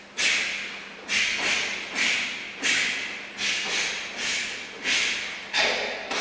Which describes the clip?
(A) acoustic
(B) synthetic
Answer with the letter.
A